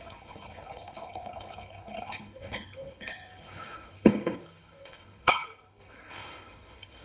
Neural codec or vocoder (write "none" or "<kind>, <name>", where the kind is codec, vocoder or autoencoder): codec, HILCodec